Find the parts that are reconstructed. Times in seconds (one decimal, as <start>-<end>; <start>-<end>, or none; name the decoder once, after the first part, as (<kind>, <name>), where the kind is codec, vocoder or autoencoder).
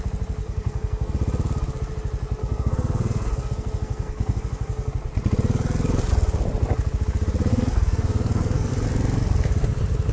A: 0.4-1.1 (codec, SNAC); 2.4-4.9; 7.5-8.7